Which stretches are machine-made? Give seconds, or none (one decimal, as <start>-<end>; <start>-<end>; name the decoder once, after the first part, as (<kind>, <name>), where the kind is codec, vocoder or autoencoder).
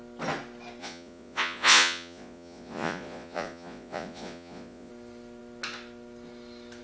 0.8-4.9 (vocoder, Vocos)